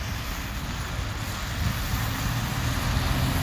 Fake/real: real